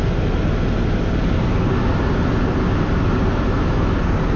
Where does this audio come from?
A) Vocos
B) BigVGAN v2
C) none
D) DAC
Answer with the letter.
C